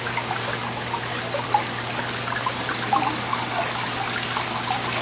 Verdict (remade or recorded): recorded